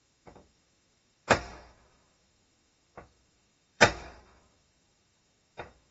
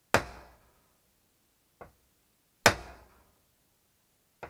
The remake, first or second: first